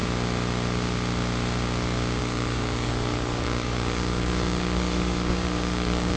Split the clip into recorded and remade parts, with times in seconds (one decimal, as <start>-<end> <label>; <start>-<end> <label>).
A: 0.0-2.2 recorded; 2.2-6.2 remade